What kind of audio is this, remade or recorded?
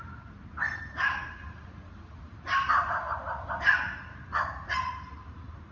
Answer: recorded